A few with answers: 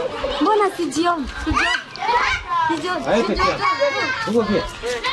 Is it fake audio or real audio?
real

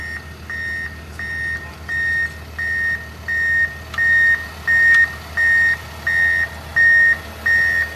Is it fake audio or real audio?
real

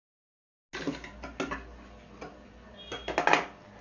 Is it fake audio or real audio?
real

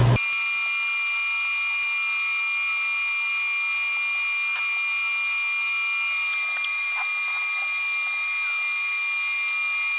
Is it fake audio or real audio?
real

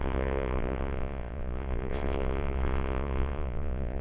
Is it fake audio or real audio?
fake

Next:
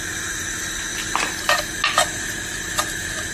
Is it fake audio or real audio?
real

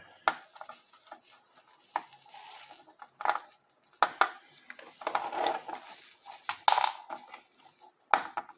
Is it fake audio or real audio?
real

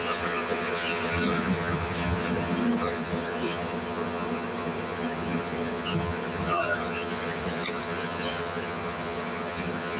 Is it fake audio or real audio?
fake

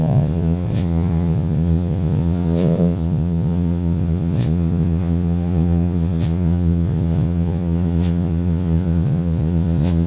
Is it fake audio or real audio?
fake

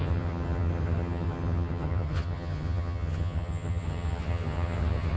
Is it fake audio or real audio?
fake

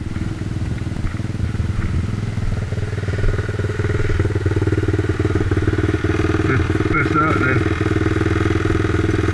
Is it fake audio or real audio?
real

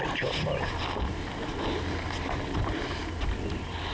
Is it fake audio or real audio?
real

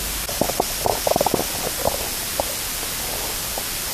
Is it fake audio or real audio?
real